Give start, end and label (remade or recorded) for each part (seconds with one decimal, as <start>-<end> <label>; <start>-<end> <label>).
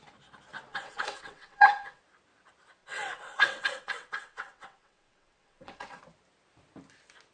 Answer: 0.0-0.7 recorded; 0.7-2.0 remade; 2.0-2.8 recorded; 2.8-6.0 remade; 6.0-7.3 recorded